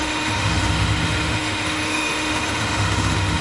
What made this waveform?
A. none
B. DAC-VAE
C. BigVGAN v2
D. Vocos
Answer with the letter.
B